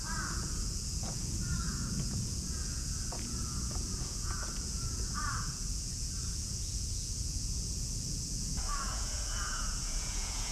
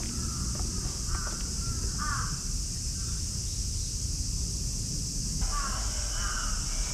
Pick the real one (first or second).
second